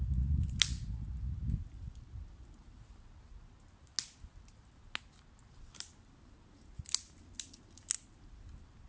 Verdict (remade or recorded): recorded